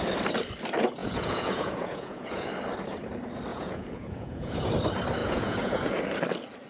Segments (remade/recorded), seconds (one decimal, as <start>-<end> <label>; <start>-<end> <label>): 0.0-1.0 recorded; 1.0-2.5 remade; 2.5-3.5 recorded; 3.5-4.7 remade; 4.7-5.2 recorded; 5.2-5.9 remade; 5.9-6.7 recorded